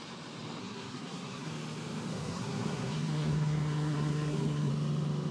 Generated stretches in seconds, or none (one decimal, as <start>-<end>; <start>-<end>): 0.6-1.5; 2.1-4.7